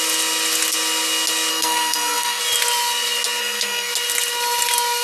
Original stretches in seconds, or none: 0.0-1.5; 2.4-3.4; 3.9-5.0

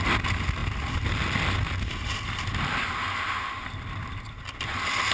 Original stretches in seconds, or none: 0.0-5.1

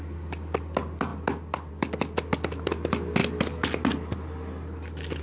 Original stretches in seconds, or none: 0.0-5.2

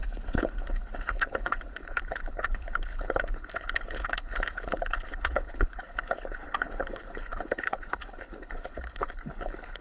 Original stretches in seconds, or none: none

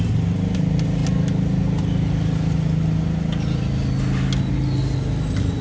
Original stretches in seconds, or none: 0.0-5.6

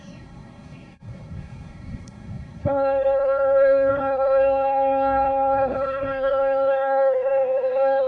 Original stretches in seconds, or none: none

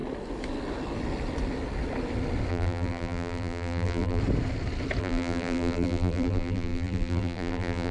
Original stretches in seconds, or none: 0.0-2.5; 4.2-5.0

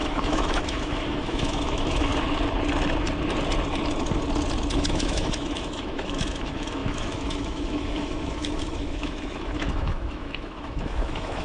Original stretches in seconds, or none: 2.1-4.7